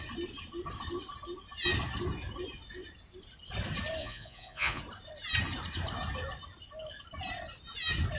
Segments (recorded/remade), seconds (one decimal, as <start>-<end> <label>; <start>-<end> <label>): 0.0-4.0 recorded; 4.0-4.8 remade; 4.8-8.2 recorded